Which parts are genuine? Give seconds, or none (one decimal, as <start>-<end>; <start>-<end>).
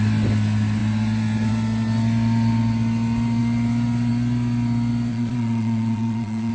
0.0-5.1